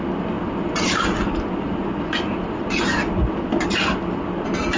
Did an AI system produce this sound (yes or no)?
no